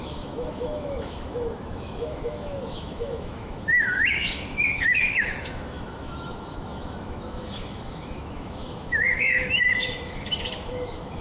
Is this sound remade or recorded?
remade